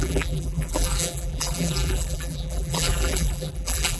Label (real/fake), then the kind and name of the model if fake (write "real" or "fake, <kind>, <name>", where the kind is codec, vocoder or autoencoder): fake, vocoder, BigVGAN v2